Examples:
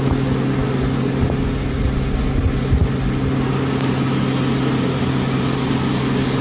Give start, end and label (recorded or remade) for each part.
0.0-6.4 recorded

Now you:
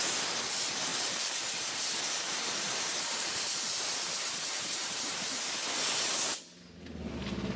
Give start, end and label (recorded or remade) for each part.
0.0-0.9 recorded; 0.9-5.5 remade; 5.5-7.6 recorded

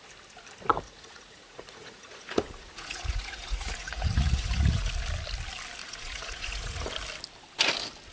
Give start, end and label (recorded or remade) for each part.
0.0-0.7 recorded; 0.7-4.9 remade; 4.9-5.8 recorded; 5.8-6.9 remade; 6.9-8.1 recorded

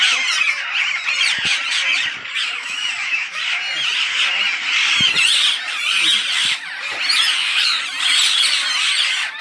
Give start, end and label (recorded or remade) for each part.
0.0-2.6 recorded; 2.6-3.4 remade; 3.4-9.4 recorded